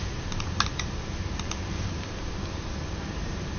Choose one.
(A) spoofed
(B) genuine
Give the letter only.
A